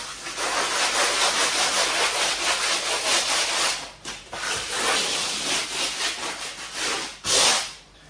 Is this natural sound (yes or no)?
yes